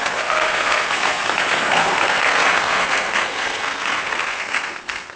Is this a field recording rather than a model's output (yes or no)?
no